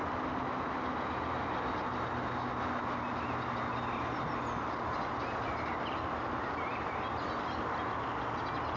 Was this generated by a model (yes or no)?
no